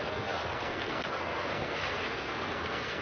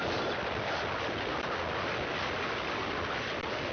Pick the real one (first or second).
second